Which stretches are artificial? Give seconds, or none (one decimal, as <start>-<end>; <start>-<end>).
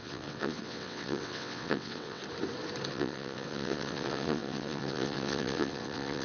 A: 0.0-2.2; 2.9-6.2